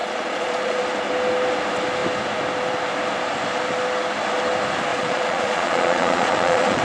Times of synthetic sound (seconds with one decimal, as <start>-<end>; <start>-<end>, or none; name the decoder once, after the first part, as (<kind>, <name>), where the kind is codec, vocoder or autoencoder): 0.0-0.8 (vocoder, Vocos); 4.9-6.8